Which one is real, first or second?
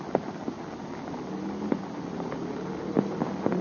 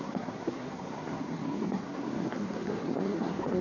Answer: first